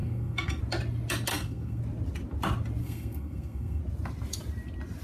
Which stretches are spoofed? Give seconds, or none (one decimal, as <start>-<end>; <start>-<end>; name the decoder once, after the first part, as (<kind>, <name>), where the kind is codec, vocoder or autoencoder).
0.0-0.6 (codec, SNAC); 1.3-1.8; 2.8-3.8